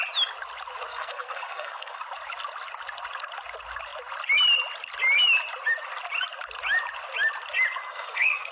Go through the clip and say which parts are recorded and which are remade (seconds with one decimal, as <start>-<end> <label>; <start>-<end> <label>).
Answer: 0.0-0.9 recorded; 0.9-2.0 remade; 2.0-7.8 recorded; 7.8-8.5 remade